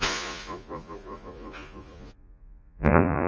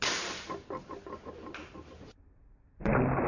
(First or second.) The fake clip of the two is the first